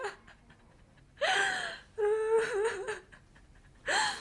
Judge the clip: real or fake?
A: real